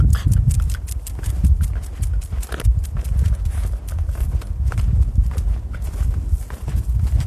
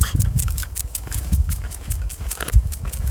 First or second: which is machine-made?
second